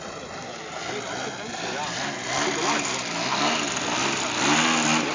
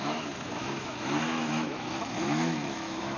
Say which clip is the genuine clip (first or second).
first